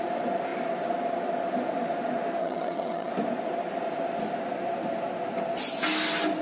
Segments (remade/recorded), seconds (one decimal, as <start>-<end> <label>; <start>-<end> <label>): 0.0-2.4 recorded; 2.4-3.1 remade; 3.1-6.4 recorded

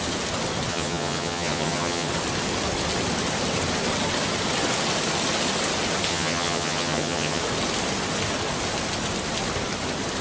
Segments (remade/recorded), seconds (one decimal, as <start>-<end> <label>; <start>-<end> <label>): 0.0-0.7 recorded; 0.7-2.1 remade; 2.1-6.1 recorded; 6.1-7.4 remade; 7.4-10.2 recorded

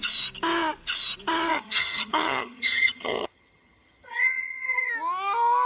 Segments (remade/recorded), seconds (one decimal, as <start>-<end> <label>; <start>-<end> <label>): 0.0-1.5 recorded; 1.5-4.9 remade; 4.9-5.7 recorded